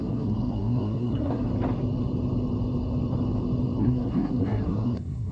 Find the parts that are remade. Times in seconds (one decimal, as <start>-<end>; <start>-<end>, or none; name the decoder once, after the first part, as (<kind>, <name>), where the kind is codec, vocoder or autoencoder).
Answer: 0.0-1.5 (codec, SNAC); 3.8-5.3